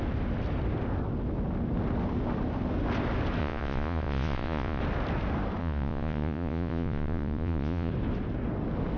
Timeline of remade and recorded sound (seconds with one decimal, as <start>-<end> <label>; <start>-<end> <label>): 0.0-3.4 recorded; 3.4-4.8 remade; 4.8-5.6 recorded; 5.6-7.9 remade; 7.9-9.0 recorded